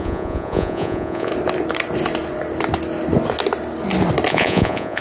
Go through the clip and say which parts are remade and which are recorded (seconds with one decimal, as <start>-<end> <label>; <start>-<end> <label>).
0.0-1.3 remade; 1.3-4.3 recorded; 4.3-5.0 remade